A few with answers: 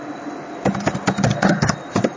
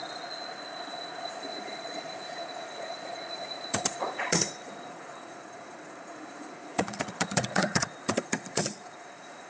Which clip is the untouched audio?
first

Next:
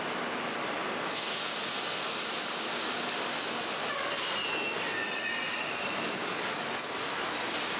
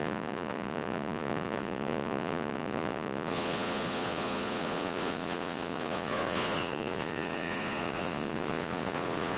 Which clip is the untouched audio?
first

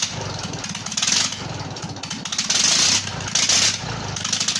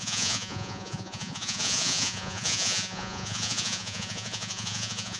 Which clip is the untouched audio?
first